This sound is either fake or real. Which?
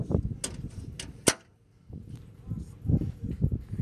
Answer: real